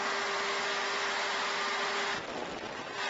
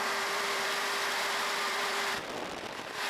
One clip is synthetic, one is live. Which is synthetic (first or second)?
second